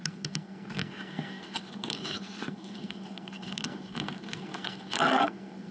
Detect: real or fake fake